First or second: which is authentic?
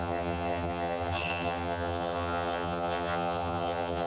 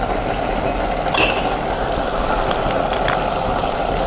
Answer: second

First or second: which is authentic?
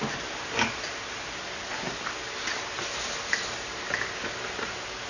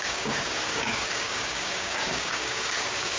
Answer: first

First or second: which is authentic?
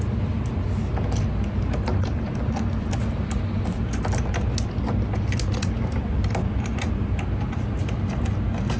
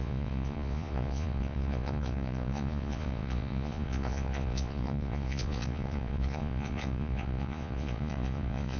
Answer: first